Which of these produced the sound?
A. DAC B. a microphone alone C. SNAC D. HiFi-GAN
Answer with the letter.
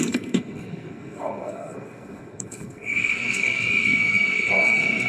C